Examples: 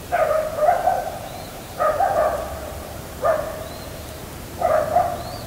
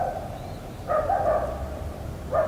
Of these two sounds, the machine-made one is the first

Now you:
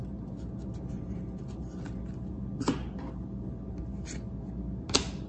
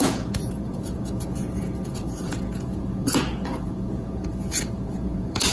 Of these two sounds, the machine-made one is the second